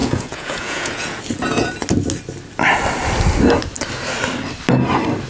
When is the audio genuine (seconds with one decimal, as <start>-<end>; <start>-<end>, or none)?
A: 1.2-5.3